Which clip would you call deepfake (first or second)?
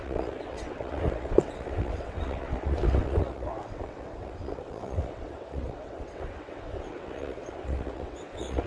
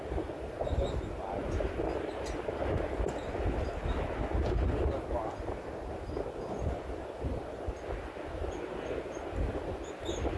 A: first